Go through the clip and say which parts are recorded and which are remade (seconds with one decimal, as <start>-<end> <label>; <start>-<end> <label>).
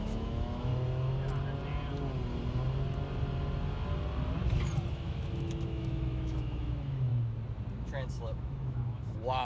0.0-0.7 remade; 0.7-4.9 recorded; 4.9-7.1 remade; 7.1-7.7 recorded; 7.7-9.4 remade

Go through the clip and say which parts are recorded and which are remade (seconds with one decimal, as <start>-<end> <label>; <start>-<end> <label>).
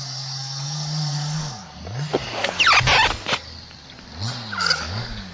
0.0-1.6 remade; 1.6-4.8 recorded; 4.8-5.3 remade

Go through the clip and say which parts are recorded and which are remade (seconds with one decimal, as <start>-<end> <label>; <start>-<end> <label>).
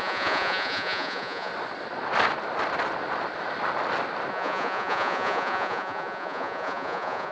0.0-1.5 remade; 1.5-4.3 recorded; 4.3-7.3 remade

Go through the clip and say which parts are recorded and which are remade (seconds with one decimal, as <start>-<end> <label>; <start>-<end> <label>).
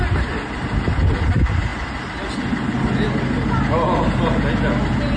0.0-5.2 recorded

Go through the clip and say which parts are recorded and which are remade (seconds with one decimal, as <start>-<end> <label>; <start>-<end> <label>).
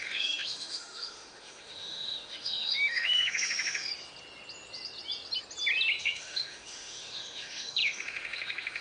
0.0-3.9 remade; 3.9-6.0 recorded; 6.0-8.8 remade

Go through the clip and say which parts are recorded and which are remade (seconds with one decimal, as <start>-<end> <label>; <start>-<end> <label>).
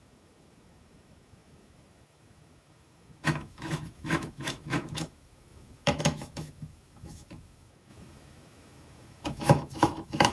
0.0-10.3 remade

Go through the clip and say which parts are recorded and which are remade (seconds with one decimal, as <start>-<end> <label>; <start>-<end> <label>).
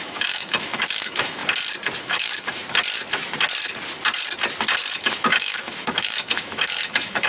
0.0-1.4 remade; 1.4-2.0 recorded; 2.0-2.6 remade; 2.6-5.0 recorded; 5.0-7.3 remade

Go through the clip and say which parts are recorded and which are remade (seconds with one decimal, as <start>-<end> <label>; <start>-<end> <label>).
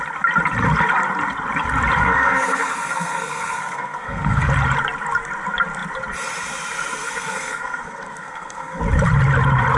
0.0-2.0 recorded; 2.0-4.5 remade; 4.5-7.0 recorded; 7.0-8.8 remade; 8.8-9.8 recorded